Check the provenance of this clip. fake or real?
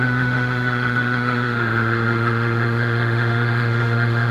fake